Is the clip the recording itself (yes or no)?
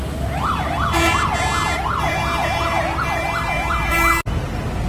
yes